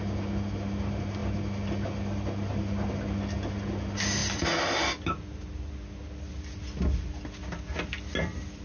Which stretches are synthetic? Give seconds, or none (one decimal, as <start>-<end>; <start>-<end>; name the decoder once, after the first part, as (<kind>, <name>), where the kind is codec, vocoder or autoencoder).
none